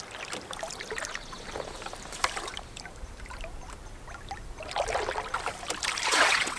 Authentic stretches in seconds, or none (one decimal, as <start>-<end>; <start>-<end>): 0.0-6.1